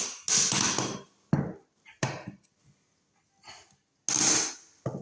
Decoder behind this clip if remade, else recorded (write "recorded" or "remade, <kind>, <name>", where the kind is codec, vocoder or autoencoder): recorded